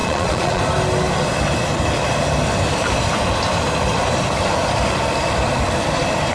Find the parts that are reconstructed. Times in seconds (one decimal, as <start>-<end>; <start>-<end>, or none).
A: 0.0-0.6